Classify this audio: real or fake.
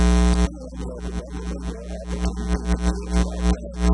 real